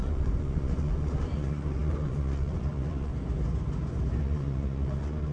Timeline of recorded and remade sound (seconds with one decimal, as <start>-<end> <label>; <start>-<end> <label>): 0.0-3.1 remade; 3.1-4.2 recorded; 4.2-5.3 remade